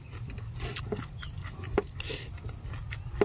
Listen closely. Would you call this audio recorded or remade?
recorded